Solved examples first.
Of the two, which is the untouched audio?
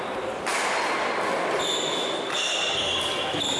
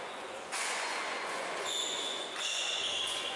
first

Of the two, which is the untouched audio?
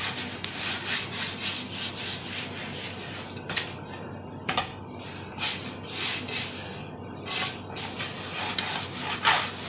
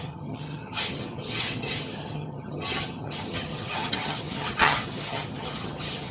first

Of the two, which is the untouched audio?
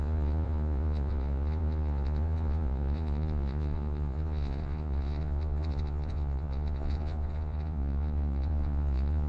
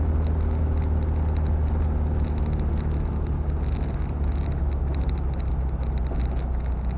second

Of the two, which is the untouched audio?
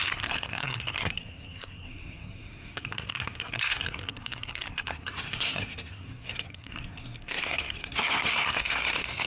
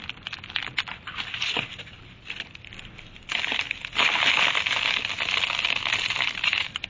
second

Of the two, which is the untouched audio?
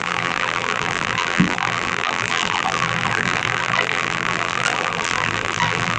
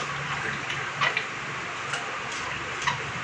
second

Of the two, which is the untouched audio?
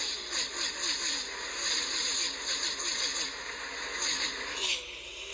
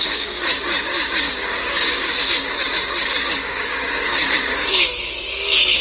first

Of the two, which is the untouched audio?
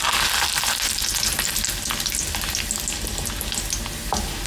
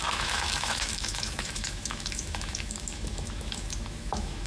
first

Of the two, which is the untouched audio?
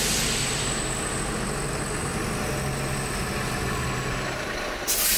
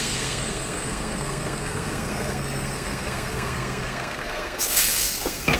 first